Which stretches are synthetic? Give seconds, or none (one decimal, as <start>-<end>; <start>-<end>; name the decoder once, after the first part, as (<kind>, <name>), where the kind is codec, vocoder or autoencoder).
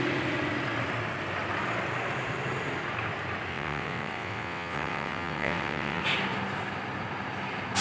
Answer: 3.5-6.0 (vocoder, WaveNeXt)